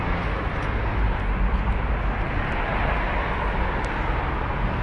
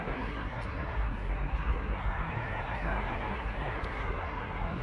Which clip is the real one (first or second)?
first